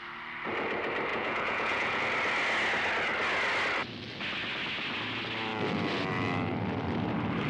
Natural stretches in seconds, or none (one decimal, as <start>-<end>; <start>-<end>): 0.0-1.1; 2.0-7.5

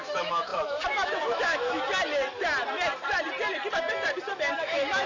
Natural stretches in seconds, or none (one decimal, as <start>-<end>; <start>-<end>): 1.9-4.6